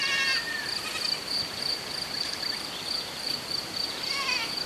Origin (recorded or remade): remade